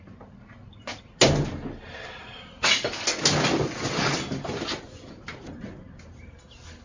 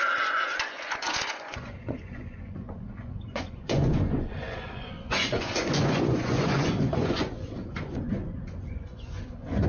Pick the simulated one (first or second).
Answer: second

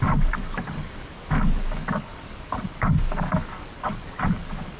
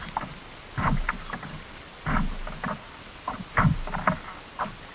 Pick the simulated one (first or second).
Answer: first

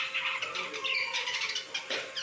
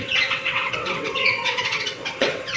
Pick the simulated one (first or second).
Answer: second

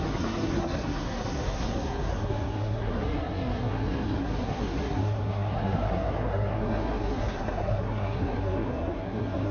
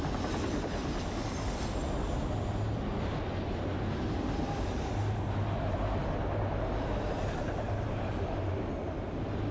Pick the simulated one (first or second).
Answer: first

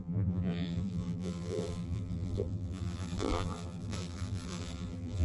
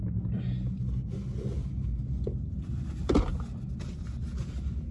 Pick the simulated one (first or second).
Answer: first